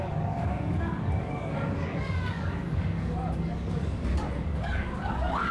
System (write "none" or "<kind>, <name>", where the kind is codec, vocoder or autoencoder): codec, DAC